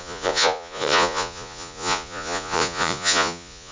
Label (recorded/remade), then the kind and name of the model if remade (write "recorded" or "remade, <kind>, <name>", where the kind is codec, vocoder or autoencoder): remade, vocoder, Vocos